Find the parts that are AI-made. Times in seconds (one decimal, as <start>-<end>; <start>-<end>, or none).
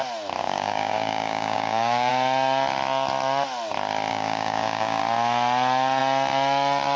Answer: 0.4-2.1; 4.1-5.0